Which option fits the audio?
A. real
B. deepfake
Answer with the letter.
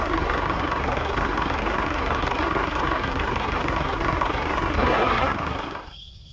B